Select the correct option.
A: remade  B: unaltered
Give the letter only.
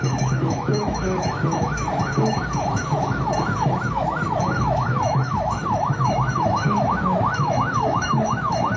A